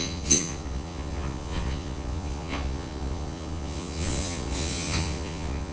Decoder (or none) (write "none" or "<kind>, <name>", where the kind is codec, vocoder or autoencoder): vocoder, Vocos